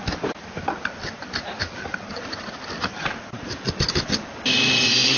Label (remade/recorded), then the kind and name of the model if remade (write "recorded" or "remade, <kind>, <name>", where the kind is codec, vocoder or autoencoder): recorded